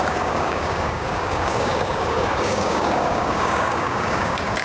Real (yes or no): no